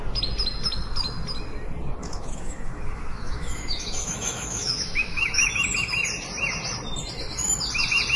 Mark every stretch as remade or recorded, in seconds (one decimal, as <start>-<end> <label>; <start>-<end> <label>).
0.0-2.0 recorded; 2.0-5.5 remade; 5.5-8.2 recorded